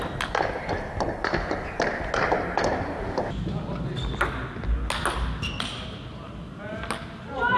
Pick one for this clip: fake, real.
real